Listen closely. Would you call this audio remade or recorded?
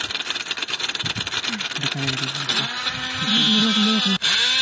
recorded